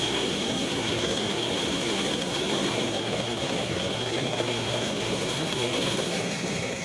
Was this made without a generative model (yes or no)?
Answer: no